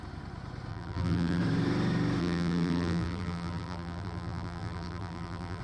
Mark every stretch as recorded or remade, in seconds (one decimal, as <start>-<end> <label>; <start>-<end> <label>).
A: 0.0-0.7 recorded; 0.7-1.4 remade; 1.4-2.2 recorded; 2.2-5.6 remade